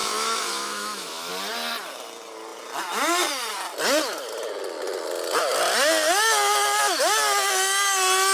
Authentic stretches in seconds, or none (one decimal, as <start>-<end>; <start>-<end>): 1.3-8.3